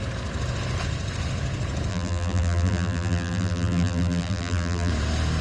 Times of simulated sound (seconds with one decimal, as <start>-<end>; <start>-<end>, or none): 1.9-4.9